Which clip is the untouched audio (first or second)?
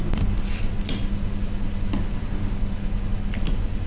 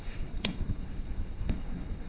first